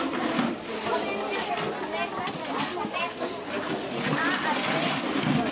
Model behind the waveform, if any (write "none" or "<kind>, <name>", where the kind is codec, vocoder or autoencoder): none